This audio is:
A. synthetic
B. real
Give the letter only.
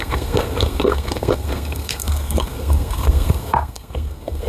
A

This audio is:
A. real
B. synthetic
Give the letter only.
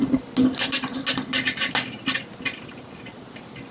A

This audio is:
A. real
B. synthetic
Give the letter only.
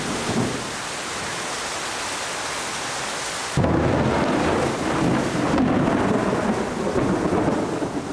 A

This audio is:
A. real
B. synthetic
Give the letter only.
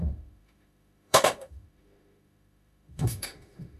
B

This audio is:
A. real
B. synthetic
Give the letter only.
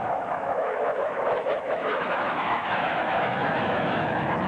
B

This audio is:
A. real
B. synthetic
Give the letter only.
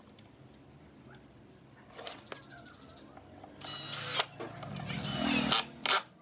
A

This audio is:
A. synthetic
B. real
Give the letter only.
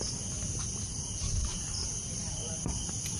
B